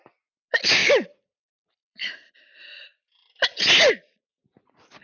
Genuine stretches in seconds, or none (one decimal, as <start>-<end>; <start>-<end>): 0.0-0.8; 2.4-5.0